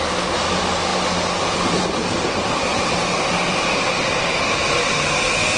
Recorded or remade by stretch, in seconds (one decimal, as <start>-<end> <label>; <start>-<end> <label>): 0.0-2.7 recorded; 2.7-4.8 remade; 4.8-5.6 recorded